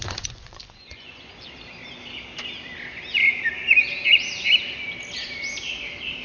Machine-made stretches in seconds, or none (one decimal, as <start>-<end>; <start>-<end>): 0.0-1.3